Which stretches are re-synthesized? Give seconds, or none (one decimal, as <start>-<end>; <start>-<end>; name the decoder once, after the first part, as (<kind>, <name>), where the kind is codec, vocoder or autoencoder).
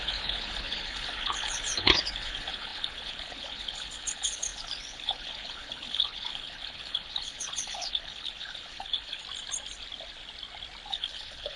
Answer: 0.0-9.2 (codec, HILCodec); 10.9-11.6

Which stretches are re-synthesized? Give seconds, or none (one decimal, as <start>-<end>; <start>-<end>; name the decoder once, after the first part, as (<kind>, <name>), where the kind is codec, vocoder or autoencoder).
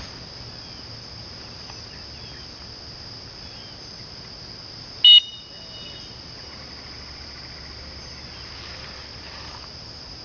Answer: none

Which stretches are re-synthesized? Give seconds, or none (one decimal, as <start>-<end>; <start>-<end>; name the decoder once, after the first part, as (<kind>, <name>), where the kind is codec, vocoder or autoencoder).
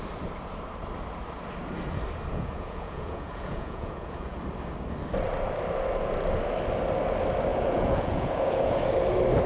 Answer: 2.3-4.4 (vocoder, Vocos); 7.5-8.8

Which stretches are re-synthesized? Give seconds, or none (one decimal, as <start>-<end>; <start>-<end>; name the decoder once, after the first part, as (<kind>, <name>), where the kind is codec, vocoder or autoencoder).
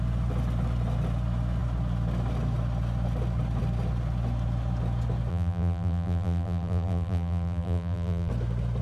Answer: 5.3-8.3 (vocoder, BigVGAN v2)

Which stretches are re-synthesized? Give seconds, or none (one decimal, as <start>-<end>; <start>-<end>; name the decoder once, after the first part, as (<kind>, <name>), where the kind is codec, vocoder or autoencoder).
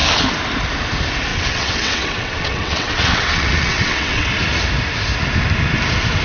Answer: 1.3-4.3 (vocoder, WaveNeXt)